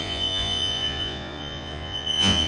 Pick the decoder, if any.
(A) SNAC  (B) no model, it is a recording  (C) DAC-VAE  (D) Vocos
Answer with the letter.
D